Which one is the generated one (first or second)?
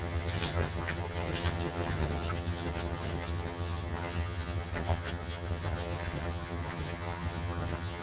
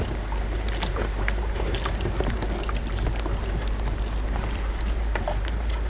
first